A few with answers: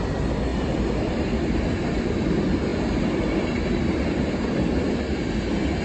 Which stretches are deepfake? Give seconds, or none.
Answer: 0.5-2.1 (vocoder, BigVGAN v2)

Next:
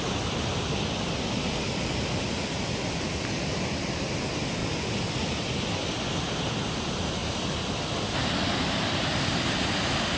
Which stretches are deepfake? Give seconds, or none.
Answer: 0.0-4.6 (vocoder, BigVGAN v2); 5.3-10.2

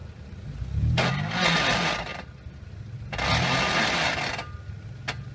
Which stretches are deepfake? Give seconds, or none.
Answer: none